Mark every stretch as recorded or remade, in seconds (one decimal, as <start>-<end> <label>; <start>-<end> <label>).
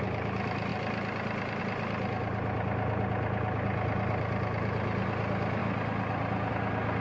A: 0.0-7.0 recorded